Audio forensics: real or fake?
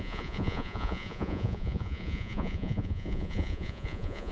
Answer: fake